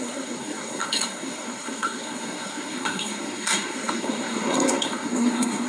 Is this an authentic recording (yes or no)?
no